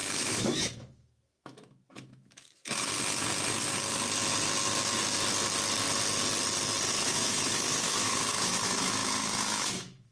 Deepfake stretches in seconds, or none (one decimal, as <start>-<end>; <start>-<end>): 0.0-2.9; 6.9-10.1